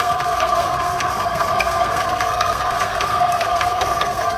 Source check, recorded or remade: remade